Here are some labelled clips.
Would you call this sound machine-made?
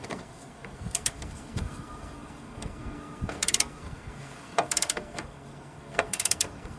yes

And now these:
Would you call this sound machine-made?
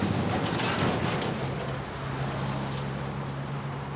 no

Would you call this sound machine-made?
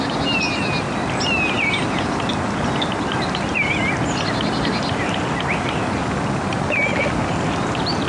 no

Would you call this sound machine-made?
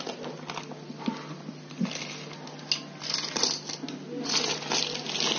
no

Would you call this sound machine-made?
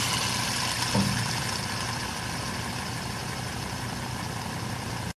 no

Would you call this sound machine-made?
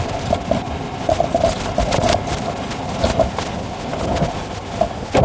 no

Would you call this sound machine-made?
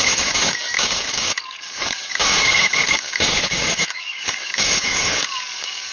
yes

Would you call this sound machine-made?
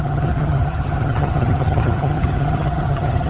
yes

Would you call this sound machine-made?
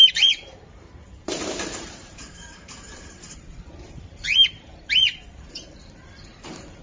yes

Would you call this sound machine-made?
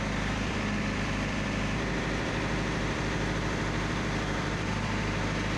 yes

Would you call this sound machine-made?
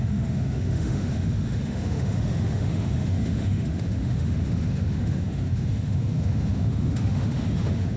yes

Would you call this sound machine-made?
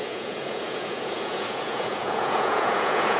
yes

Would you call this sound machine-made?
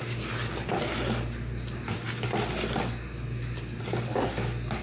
no